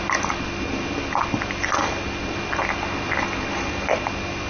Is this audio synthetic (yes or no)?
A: no